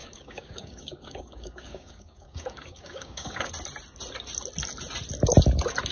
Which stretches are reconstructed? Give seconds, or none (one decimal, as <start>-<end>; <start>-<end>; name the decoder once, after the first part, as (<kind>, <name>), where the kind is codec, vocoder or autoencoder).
0.0-3.5 (codec, DAC)